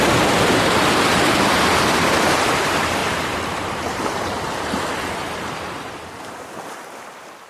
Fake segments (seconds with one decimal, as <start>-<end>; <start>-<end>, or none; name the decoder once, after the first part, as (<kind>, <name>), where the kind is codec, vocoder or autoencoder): 3.0-5.9 (vocoder, BigVGAN v2)